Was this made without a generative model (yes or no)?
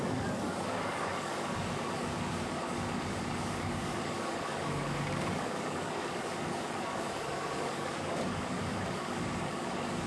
no